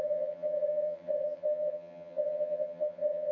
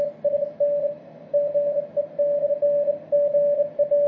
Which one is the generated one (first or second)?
first